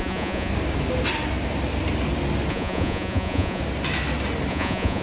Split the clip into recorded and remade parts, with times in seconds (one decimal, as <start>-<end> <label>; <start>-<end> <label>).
0.0-0.5 remade; 0.5-2.5 recorded; 2.5-3.6 remade; 3.6-4.5 recorded; 4.5-5.0 remade